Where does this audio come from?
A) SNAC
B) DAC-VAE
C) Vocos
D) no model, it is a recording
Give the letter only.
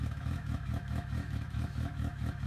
B